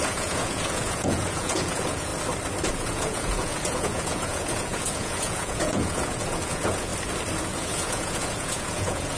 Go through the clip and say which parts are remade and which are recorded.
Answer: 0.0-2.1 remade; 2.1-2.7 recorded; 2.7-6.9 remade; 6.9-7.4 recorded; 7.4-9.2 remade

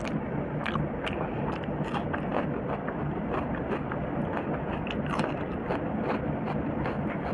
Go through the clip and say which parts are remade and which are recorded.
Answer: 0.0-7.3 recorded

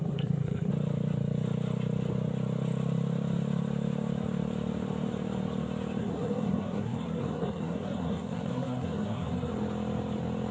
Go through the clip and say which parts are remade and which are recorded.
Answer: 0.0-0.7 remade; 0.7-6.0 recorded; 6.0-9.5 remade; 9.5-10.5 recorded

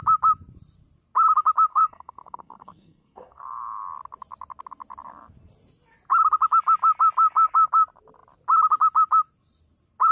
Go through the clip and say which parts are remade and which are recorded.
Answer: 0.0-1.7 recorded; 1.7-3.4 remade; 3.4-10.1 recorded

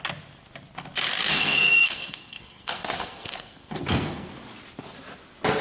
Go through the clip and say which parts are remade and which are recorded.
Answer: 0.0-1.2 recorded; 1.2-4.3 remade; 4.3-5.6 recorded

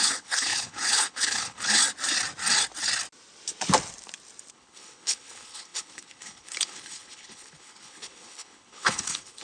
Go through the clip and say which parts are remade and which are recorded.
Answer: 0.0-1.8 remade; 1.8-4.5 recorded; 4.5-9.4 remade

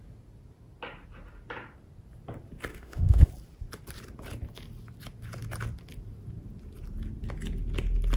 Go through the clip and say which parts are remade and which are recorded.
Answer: 0.0-2.7 recorded; 2.7-3.3 remade; 3.3-8.2 recorded